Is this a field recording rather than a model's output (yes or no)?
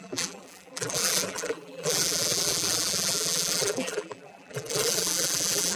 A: no